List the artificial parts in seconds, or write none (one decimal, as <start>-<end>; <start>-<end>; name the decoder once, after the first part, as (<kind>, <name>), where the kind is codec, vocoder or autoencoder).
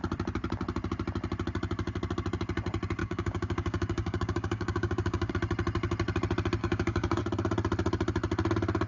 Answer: 3.0-5.3 (codec, DAC); 6.6-7.2